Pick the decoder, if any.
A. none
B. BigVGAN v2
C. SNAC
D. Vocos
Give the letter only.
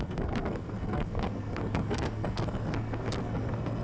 C